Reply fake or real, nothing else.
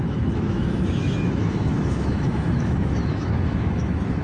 fake